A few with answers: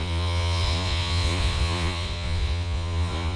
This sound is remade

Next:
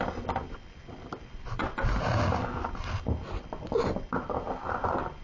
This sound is recorded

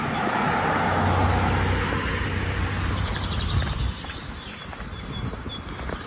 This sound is recorded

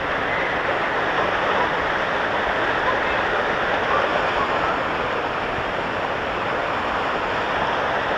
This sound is recorded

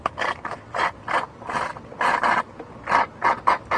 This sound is recorded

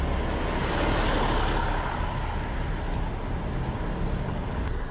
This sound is recorded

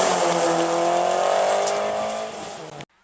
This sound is recorded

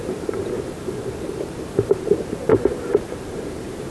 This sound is remade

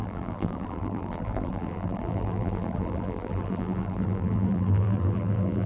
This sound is remade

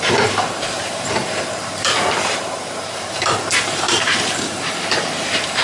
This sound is remade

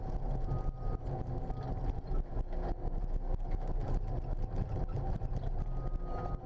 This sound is recorded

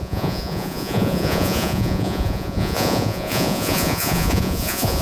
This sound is remade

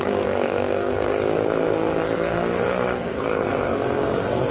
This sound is remade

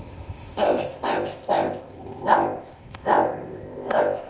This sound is remade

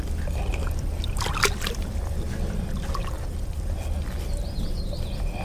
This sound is recorded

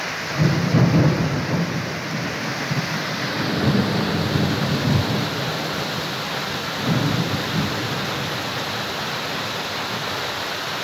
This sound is recorded